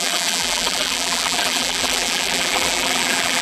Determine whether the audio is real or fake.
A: fake